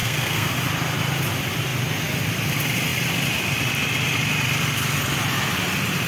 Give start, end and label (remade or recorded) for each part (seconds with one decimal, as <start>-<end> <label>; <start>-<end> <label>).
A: 0.0-0.5 remade; 0.5-6.1 recorded